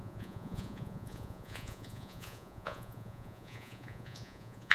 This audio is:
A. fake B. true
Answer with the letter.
A